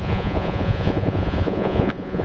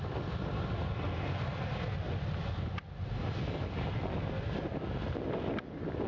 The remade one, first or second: first